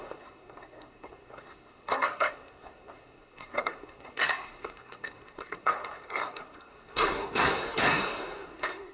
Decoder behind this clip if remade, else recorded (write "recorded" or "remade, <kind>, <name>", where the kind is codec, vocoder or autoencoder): remade, codec, SNAC